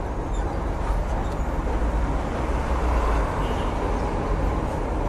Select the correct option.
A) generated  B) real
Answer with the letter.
B